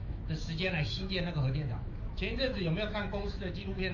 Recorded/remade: remade